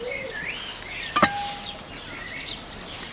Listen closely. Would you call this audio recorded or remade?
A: recorded